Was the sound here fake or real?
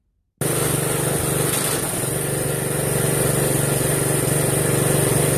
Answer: real